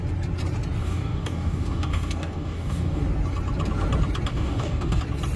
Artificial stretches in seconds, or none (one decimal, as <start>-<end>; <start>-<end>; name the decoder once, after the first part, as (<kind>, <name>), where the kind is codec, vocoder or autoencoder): 0.8-3.0 (codec, DAC); 4.3-5.0